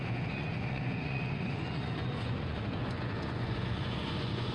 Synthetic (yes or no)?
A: yes